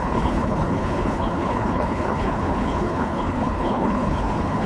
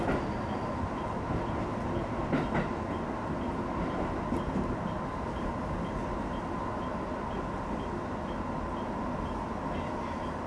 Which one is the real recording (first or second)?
second